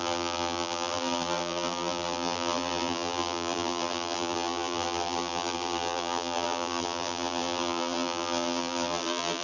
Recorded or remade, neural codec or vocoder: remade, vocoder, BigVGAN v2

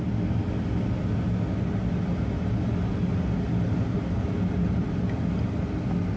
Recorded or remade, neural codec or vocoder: recorded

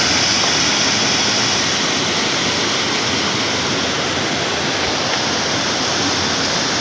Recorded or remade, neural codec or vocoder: recorded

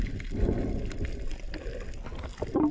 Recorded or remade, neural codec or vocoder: recorded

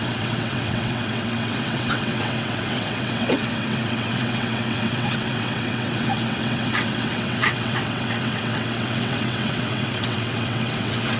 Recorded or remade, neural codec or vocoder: remade, vocoder, WaveNeXt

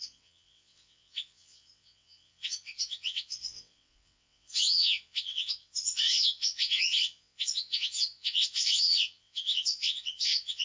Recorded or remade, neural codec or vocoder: remade, vocoder, WaveNeXt